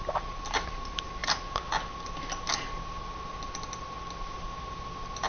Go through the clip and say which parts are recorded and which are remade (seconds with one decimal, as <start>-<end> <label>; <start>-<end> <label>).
0.0-5.3 recorded